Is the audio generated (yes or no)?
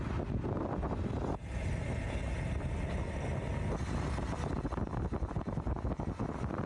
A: no